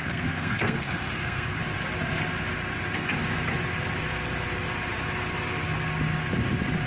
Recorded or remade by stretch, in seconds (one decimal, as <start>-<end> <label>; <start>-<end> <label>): 0.0-1.6 remade; 1.6-6.9 recorded